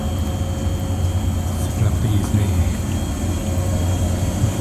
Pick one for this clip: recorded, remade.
recorded